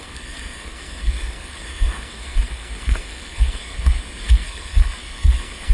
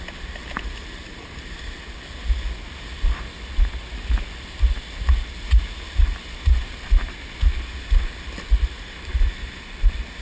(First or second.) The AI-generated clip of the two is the first